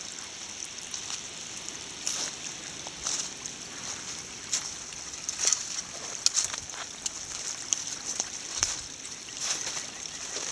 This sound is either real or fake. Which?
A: real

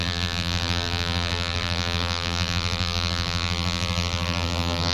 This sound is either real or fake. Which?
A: fake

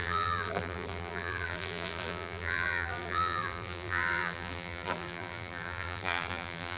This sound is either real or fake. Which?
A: fake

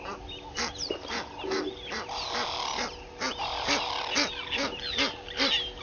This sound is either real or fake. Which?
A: real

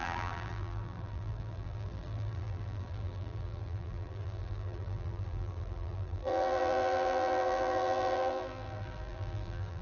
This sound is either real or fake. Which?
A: fake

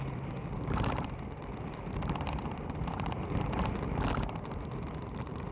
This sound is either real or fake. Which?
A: fake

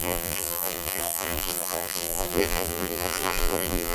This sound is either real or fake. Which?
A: fake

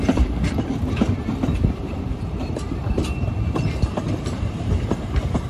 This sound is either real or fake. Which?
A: fake